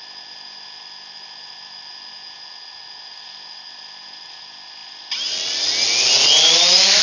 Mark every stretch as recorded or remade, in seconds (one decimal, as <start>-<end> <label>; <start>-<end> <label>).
0.0-7.0 recorded